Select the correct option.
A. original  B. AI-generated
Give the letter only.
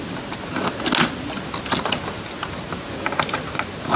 A